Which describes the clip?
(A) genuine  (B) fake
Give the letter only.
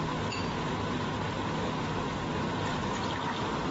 A